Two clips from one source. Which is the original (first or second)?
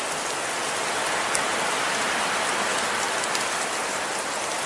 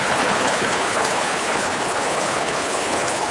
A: first